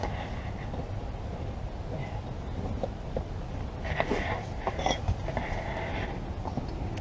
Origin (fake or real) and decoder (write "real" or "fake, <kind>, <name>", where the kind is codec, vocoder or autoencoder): real